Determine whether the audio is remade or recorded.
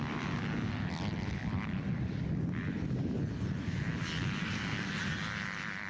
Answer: recorded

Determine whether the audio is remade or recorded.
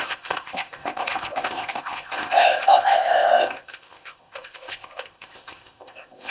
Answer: remade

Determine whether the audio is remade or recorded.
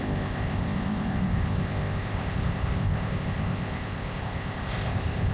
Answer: remade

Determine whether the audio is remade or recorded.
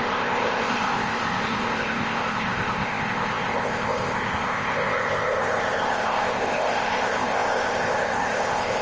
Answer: remade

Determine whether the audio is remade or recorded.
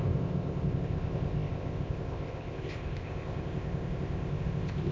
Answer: remade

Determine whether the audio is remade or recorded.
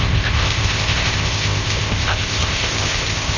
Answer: remade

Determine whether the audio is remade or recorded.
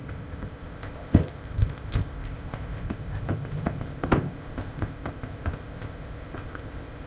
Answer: remade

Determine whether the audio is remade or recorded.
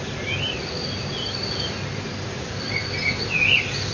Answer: recorded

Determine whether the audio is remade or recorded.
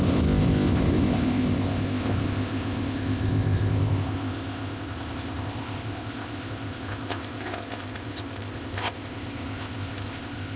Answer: remade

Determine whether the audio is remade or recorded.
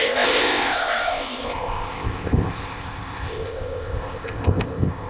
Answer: remade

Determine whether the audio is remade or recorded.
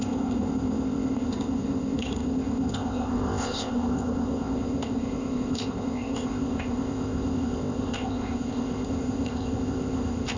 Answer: remade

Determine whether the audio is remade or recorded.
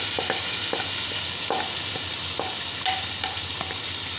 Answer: recorded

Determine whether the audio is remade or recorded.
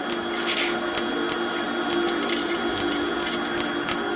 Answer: recorded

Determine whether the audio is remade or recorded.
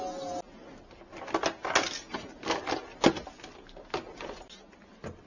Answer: recorded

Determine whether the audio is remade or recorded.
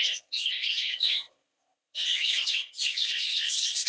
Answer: remade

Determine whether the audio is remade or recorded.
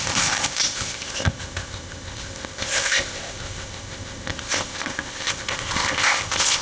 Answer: remade